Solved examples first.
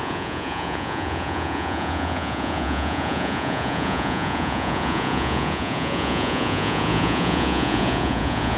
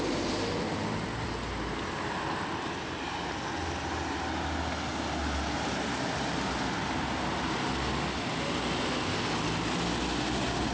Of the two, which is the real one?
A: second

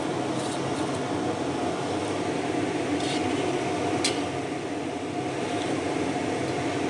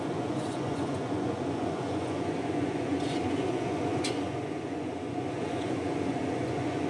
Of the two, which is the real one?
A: first